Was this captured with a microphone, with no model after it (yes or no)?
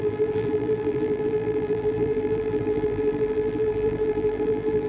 no